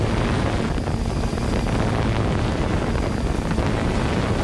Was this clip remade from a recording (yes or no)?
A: no